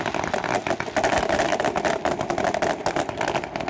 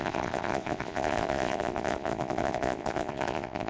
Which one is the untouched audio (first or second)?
first